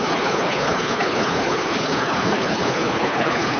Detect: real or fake fake